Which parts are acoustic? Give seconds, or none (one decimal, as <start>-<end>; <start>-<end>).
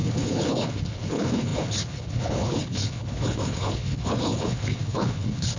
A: none